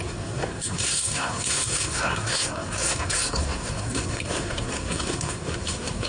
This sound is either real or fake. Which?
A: fake